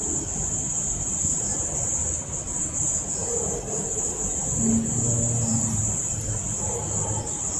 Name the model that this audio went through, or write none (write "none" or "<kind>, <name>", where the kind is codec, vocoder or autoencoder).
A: none